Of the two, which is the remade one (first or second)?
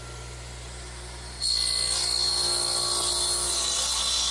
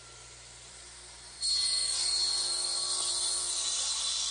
second